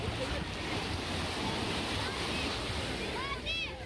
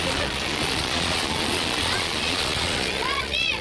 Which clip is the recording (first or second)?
first